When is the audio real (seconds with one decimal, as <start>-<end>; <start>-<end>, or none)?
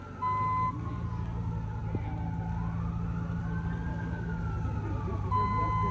0.0-3.9; 4.4-5.9